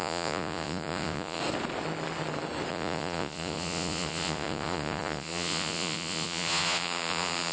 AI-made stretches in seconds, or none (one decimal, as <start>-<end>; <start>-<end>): 0.0-1.4; 2.7-7.5